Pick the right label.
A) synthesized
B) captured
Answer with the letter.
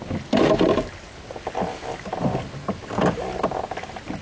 B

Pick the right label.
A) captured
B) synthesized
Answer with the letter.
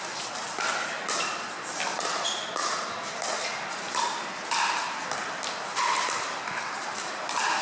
A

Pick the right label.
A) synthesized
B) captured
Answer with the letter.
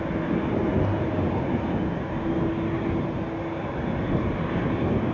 B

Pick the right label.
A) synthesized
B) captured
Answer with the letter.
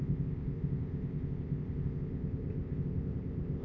A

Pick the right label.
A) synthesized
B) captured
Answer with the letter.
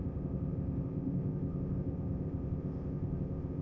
A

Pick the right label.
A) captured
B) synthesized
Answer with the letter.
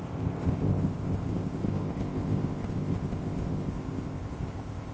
B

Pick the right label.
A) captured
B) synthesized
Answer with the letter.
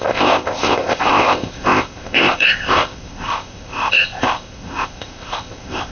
B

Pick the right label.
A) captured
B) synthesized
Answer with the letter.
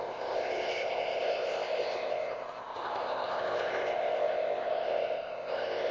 B